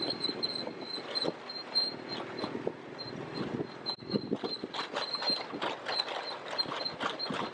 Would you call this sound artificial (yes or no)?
no